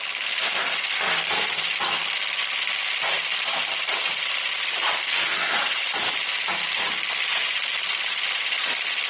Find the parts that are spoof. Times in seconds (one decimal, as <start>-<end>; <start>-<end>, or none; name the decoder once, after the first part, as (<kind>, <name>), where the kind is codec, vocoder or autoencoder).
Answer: 3.9-6.0 (vocoder, BigVGAN v2); 7.2-7.7